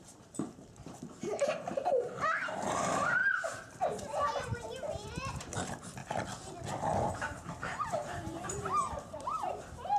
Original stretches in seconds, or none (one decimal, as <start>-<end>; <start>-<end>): 6.0-7.2